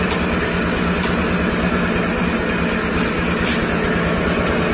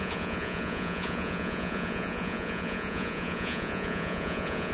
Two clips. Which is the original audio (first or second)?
first